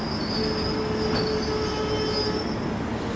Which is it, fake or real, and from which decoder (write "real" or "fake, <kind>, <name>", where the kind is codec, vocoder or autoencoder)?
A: real